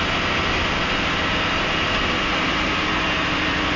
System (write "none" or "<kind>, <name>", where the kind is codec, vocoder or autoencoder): none